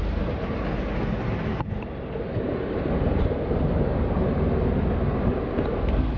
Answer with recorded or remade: recorded